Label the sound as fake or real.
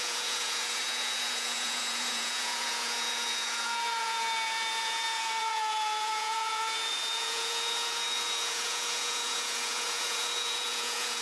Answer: fake